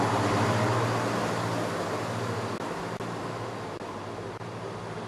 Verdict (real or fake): real